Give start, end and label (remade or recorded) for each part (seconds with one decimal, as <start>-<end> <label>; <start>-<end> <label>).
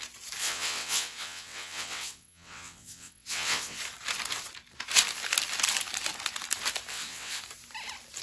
0.0-0.4 recorded; 0.4-3.8 remade; 3.8-6.9 recorded; 6.9-7.4 remade; 7.4-8.2 recorded